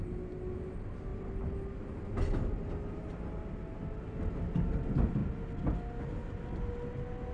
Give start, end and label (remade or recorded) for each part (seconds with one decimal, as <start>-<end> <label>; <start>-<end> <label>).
0.0-7.3 recorded